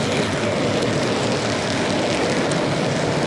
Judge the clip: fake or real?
real